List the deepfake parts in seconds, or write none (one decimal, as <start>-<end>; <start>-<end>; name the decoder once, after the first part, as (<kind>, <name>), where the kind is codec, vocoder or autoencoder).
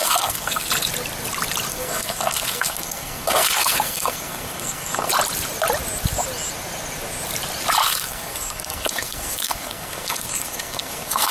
0.0-0.7 (codec, SNAC); 1.7-5.1; 7.8-11.3